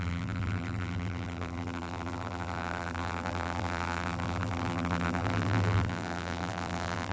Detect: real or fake fake